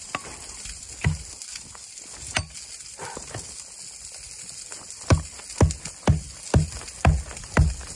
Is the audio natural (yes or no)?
yes